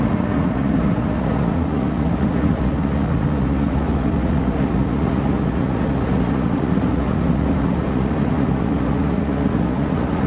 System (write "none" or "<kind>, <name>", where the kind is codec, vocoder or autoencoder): vocoder, Vocos